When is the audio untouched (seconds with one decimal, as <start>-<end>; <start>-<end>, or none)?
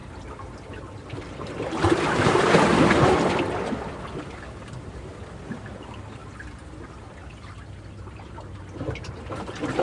0.0-1.1; 2.7-5.7; 6.2-7.1